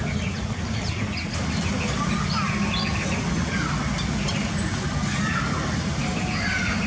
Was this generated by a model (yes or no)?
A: no